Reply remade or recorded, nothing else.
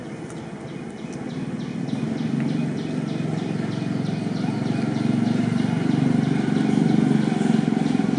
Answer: recorded